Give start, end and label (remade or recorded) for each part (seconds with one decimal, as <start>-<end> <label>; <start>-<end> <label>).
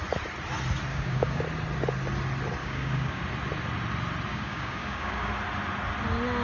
0.0-0.9 recorded; 0.9-1.4 remade; 1.4-2.6 recorded; 2.6-3.2 remade; 3.2-4.3 recorded; 4.3-5.3 remade; 5.3-6.4 recorded